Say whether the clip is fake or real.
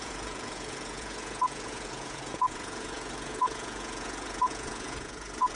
fake